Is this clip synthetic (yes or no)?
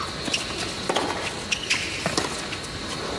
no